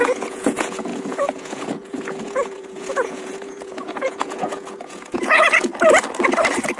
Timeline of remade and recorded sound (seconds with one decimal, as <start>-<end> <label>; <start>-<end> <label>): 0.0-5.7 remade; 5.7-6.8 recorded